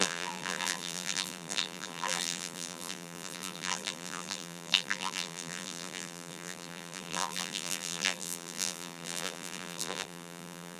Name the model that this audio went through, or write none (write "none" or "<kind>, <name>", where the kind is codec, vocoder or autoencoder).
vocoder, BigVGAN v2